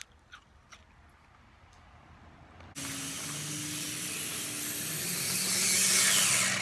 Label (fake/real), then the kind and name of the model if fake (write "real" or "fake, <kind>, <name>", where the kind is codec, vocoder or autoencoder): real